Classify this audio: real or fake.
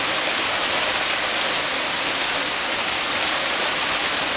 real